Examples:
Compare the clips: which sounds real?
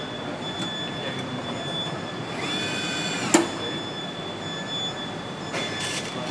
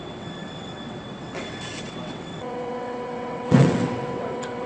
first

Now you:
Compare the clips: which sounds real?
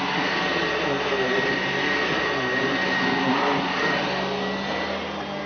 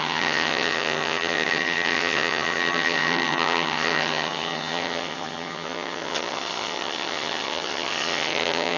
first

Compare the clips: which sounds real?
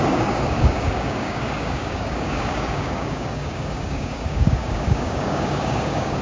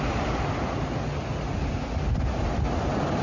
second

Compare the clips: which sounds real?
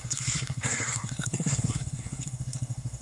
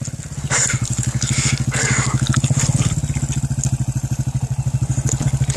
second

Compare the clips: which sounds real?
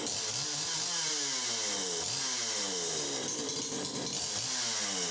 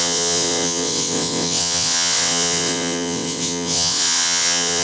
first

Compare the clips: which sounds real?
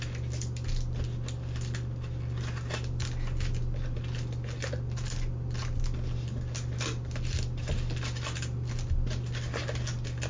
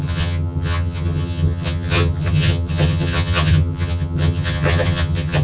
first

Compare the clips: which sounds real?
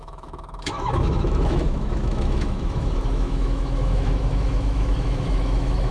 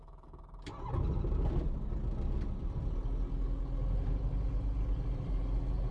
second